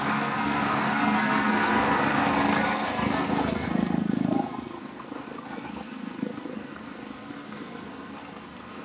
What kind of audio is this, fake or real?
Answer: fake